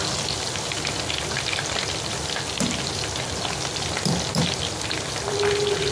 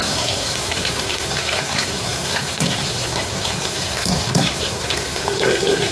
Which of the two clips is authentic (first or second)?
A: first